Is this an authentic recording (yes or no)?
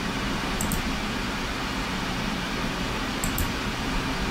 yes